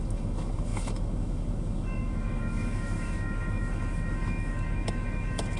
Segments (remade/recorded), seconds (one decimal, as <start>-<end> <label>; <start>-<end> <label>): 0.0-5.6 remade